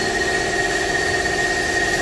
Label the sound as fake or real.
real